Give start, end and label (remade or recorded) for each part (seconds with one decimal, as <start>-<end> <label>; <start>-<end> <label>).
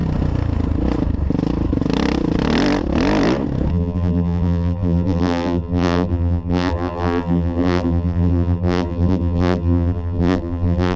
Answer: 0.0-3.7 recorded; 3.7-11.0 remade